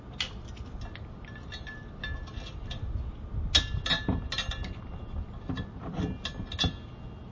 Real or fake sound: real